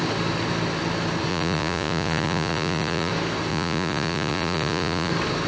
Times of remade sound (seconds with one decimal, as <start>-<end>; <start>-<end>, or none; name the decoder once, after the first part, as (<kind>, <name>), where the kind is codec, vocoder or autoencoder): 1.3-3.1 (vocoder, Vocos); 3.5-5.1